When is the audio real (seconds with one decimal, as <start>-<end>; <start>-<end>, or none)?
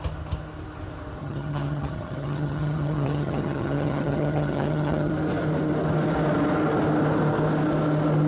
0.0-1.2; 5.1-8.3